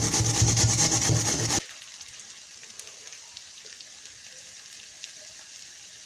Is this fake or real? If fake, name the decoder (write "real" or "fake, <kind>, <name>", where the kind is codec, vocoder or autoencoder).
real